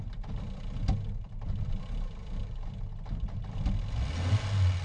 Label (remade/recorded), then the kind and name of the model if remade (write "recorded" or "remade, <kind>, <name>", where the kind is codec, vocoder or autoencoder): recorded